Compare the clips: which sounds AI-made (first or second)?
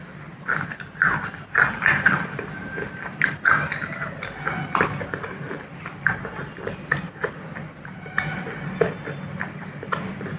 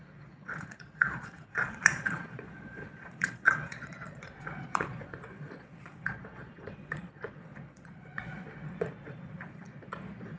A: second